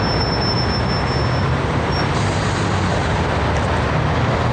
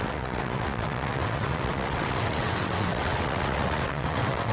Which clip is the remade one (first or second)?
second